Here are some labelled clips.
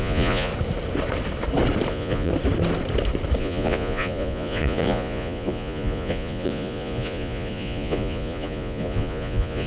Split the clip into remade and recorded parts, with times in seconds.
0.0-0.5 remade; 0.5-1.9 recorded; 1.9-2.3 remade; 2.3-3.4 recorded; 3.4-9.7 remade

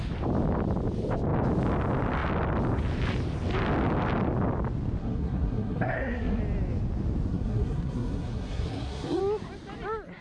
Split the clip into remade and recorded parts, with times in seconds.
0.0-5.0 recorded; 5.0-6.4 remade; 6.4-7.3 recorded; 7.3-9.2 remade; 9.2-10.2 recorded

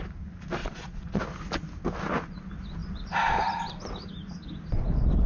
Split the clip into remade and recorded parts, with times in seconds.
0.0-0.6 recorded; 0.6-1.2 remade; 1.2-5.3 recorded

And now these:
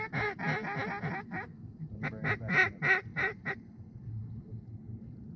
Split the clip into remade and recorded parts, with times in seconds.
0.0-5.4 recorded

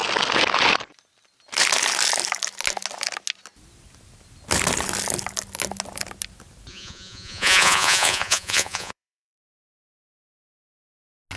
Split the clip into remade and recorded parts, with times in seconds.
0.0-6.7 recorded; 6.7-9.9 remade; 9.9-11.4 recorded

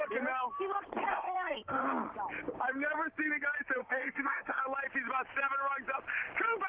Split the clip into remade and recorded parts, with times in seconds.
0.0-1.1 recorded; 1.1-1.8 remade; 1.8-3.8 recorded; 3.8-4.6 remade; 4.6-6.7 recorded

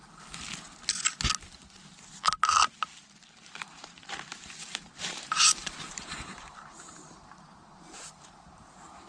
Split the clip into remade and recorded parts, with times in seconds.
0.0-2.9 recorded; 2.9-9.1 remade

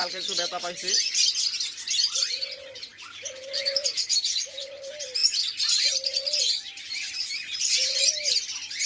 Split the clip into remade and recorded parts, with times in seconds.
0.0-5.2 remade; 5.2-6.3 recorded; 6.3-8.9 remade